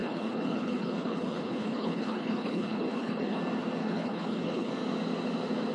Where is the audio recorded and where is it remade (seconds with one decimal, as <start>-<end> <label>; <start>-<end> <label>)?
0.0-3.4 remade; 3.4-3.8 recorded; 3.8-4.7 remade; 4.7-5.7 recorded